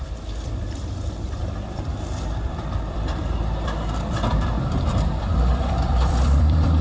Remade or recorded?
remade